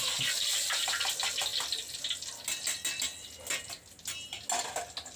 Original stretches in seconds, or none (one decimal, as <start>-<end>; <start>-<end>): 0.0-5.2